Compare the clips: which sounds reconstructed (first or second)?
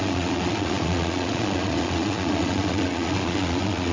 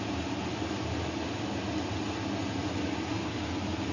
first